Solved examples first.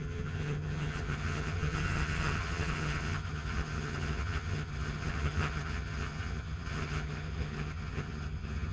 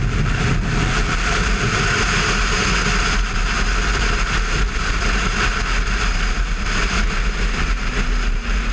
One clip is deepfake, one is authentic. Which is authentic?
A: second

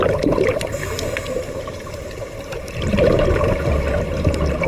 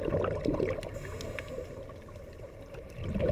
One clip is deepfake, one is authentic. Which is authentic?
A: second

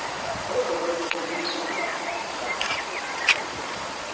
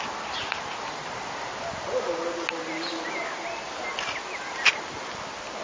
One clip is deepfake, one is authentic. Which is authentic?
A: second